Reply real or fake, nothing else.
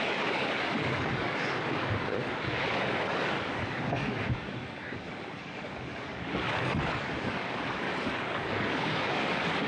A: fake